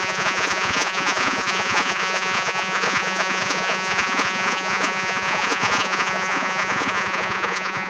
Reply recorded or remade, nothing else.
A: remade